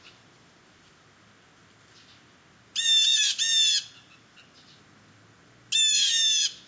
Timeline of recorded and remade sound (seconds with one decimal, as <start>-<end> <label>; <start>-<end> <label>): 0.0-6.7 recorded

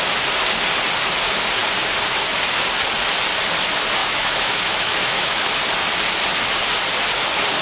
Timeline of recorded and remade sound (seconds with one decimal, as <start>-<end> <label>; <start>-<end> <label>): 0.0-4.0 recorded; 4.0-5.6 remade; 5.6-7.6 recorded

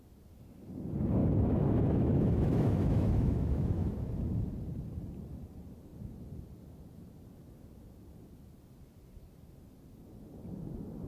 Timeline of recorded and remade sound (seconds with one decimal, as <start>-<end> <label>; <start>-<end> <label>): 0.0-1.2 recorded; 1.2-4.1 remade; 4.1-11.1 recorded

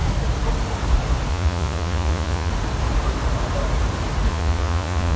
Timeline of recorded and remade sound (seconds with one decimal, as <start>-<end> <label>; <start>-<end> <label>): 0.0-1.3 recorded; 1.3-2.5 remade; 2.5-4.3 recorded; 4.3-5.2 remade

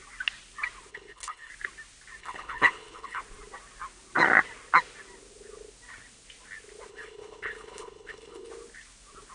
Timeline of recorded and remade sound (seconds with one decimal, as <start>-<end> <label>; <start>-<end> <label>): 0.0-0.9 recorded; 0.9-1.5 remade; 1.5-2.2 recorded; 2.2-3.2 remade; 3.2-6.9 recorded; 6.9-8.5 remade; 8.5-9.3 recorded

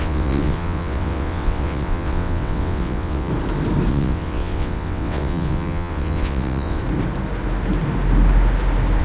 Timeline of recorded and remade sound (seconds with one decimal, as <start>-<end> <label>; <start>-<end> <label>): 0.0-3.3 remade; 3.3-3.9 recorded; 3.9-6.8 remade; 6.8-9.0 recorded

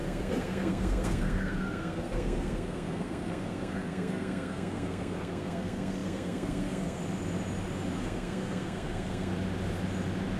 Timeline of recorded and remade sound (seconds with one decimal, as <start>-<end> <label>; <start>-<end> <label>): 0.0-7.0 remade; 7.0-8.0 recorded; 8.0-9.3 remade; 9.3-10.4 recorded

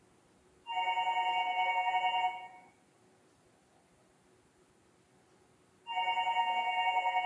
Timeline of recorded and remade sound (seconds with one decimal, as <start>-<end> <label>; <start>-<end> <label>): 0.0-1.4 recorded; 1.4-1.9 remade; 1.9-6.4 recorded; 6.4-7.3 remade